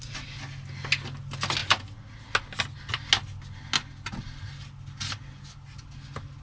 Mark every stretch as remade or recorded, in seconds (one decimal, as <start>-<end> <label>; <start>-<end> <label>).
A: 0.0-6.4 recorded